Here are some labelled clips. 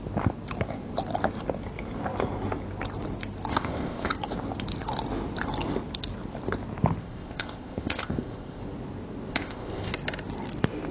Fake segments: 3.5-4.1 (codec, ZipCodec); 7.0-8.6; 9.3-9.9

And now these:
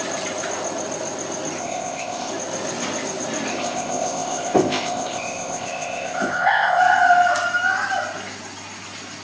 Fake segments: 1.6-2.3 (codec, ZipCodec); 3.5-6.8